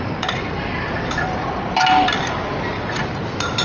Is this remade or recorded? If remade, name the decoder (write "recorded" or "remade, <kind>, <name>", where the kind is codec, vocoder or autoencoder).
recorded